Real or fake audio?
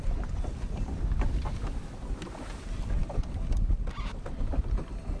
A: real